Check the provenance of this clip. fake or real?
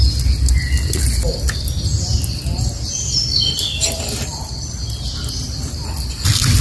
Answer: real